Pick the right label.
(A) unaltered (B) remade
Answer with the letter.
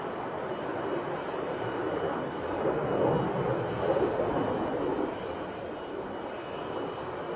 A